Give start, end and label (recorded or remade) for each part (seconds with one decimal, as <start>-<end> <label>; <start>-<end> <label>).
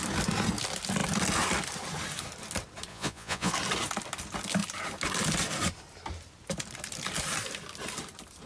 0.0-2.9 recorded; 2.9-3.5 remade; 3.5-8.5 recorded